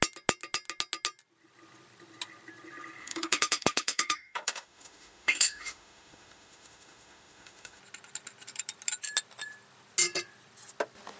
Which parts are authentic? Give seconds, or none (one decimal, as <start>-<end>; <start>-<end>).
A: 0.0-3.0; 7.8-11.2